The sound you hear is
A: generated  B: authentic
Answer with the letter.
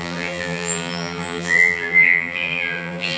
A